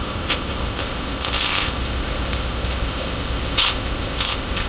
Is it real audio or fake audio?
fake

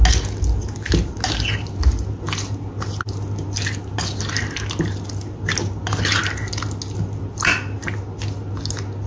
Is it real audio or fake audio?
real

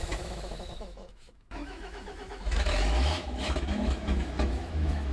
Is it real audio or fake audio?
fake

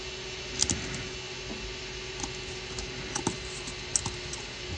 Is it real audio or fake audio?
real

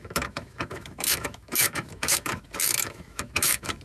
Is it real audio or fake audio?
fake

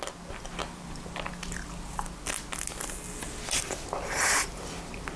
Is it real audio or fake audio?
real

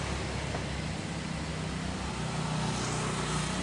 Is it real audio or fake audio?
real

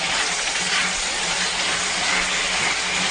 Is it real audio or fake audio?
real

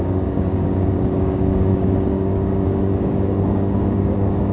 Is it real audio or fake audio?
fake